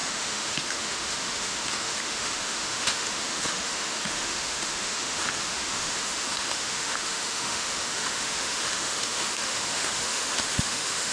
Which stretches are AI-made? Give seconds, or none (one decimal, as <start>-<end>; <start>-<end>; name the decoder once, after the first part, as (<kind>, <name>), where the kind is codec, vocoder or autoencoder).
0.0-11.1 (autoencoder, DAC-VAE)